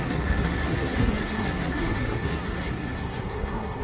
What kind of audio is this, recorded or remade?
remade